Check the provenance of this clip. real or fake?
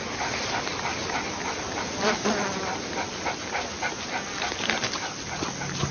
real